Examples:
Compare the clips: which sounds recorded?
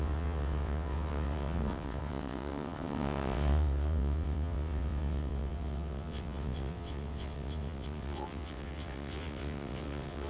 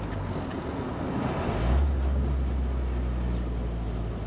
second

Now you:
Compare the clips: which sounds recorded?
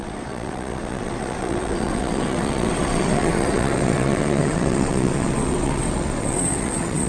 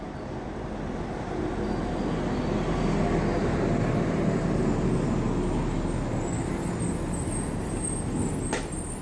second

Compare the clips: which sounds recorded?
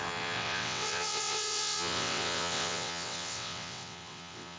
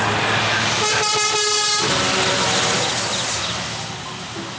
second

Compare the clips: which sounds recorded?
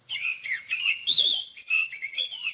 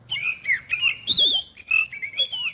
second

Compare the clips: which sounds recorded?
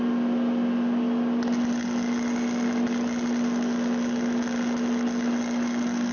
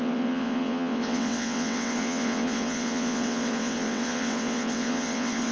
first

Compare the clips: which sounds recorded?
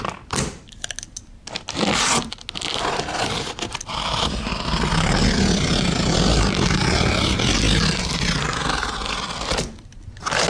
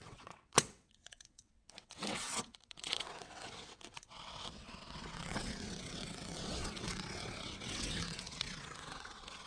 first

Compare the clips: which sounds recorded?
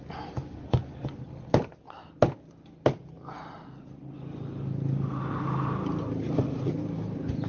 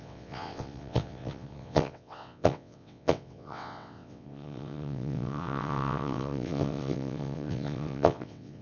first